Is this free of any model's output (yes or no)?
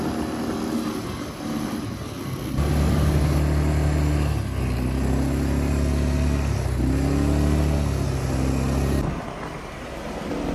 yes